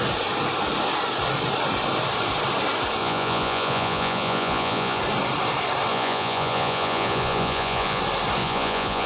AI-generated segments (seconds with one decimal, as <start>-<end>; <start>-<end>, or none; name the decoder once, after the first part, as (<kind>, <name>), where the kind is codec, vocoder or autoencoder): 3.0-5.0 (vocoder, Vocos); 5.9-8.0; 8.4-9.1